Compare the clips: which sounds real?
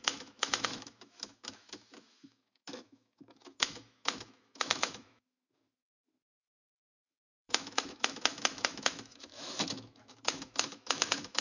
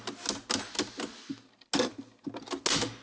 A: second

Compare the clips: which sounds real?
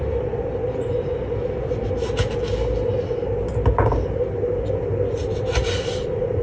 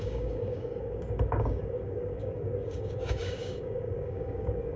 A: first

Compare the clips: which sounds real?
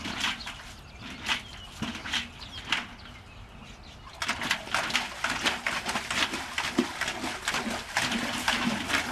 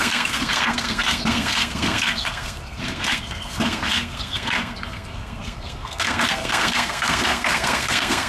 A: first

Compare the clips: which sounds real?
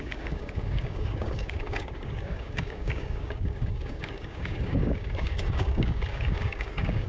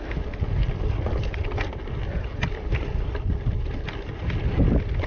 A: second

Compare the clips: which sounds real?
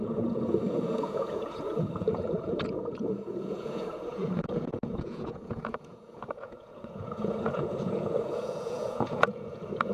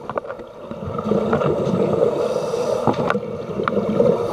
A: second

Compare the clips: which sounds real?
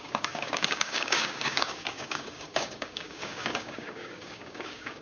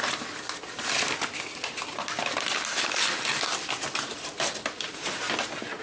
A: second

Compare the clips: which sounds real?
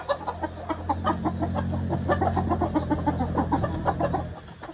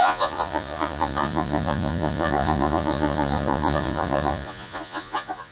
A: first